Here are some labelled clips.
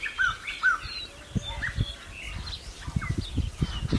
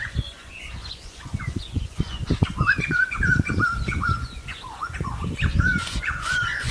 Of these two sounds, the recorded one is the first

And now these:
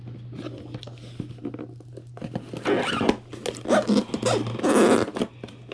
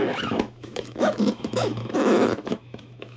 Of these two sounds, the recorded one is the first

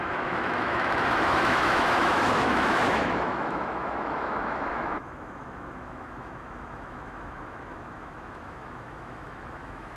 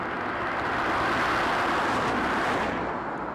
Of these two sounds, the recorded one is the second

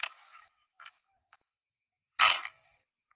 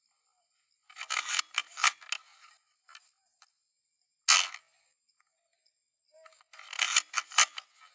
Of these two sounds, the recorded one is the second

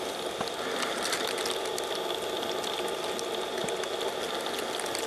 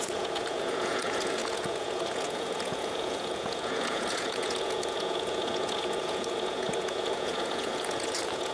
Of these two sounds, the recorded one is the first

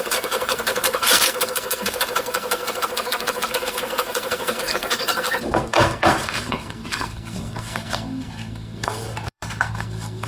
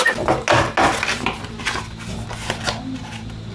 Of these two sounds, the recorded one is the second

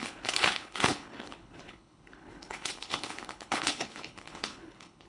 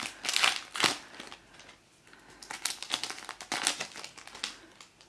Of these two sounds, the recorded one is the second